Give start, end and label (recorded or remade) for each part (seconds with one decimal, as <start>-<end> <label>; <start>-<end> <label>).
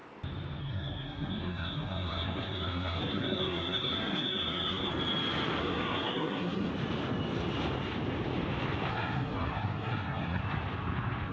0.0-0.6 recorded; 0.6-4.9 remade; 4.9-5.6 recorded; 5.6-6.7 remade; 6.7-8.9 recorded; 8.9-10.4 remade; 10.4-11.3 recorded